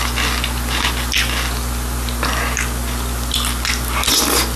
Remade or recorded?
recorded